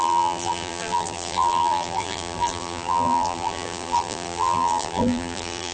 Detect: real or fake fake